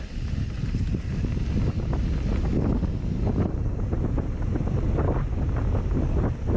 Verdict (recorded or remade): recorded